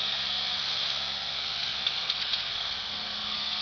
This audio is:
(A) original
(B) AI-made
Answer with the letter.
B